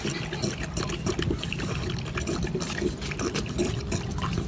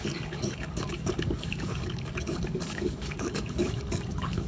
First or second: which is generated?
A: second